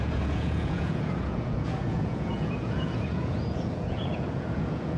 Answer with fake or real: fake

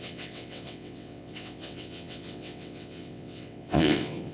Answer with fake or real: fake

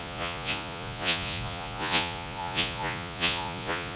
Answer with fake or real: fake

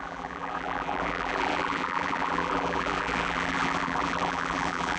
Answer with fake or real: fake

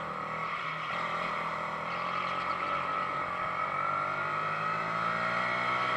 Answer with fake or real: real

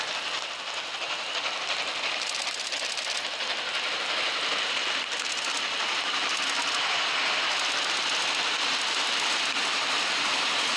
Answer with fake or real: real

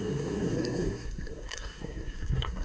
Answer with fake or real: fake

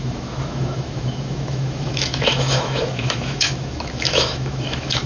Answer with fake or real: fake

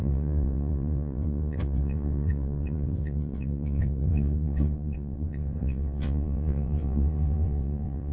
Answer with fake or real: fake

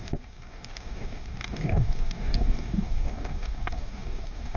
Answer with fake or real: fake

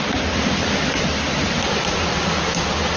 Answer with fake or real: real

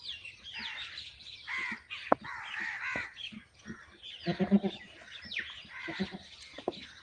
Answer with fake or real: real